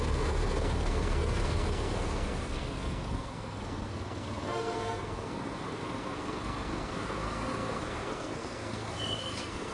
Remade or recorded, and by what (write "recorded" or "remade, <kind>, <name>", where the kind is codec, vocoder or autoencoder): remade, codec, SNAC